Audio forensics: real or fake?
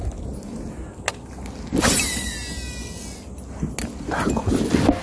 real